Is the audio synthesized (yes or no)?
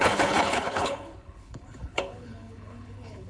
yes